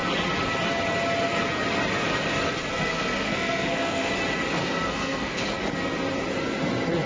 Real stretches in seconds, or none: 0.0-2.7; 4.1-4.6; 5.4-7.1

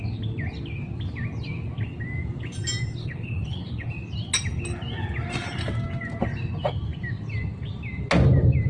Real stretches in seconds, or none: 0.0-3.0; 3.9-8.7

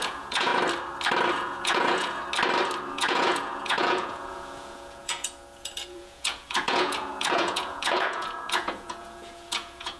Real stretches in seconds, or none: 0.5-1.3; 2.2-2.9

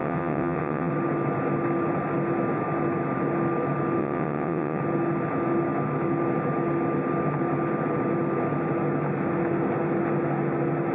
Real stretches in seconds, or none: 0.9-4.0; 4.8-10.9

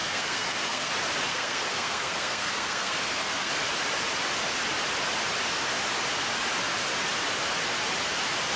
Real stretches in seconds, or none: 0.9-1.3; 3.5-8.6